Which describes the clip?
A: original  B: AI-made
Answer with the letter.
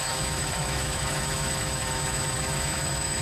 B